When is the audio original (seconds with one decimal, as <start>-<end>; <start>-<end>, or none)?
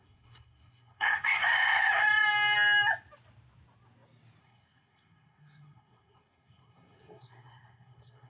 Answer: 1.4-4.4